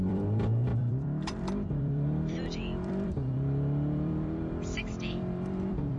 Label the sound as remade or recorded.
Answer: remade